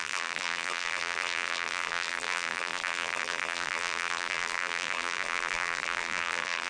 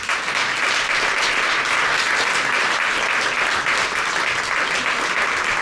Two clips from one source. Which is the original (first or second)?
second